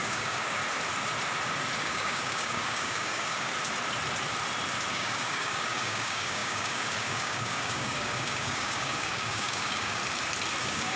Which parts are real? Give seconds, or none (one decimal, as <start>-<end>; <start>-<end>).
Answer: 0.6-1.8; 3.5-4.9; 10.0-10.6